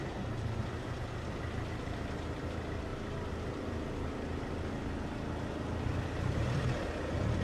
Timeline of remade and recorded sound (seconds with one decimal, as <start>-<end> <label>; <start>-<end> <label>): 0.0-7.4 recorded